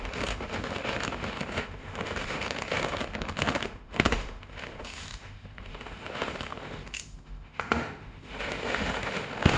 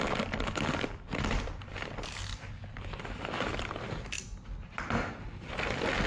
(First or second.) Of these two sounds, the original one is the second